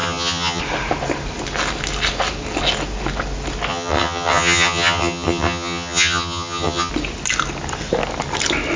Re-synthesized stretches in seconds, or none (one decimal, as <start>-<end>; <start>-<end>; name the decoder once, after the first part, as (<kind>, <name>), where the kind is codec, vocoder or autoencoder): 0.0-0.6 (vocoder, HiFi-GAN); 3.7-6.9